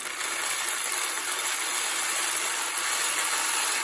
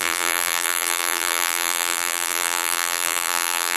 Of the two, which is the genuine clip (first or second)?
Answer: first